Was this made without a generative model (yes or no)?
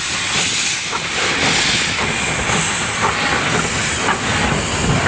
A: yes